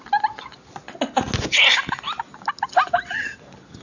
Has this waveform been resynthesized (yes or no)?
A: no